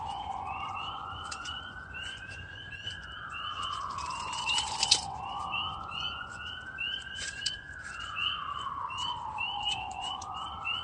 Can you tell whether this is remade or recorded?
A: remade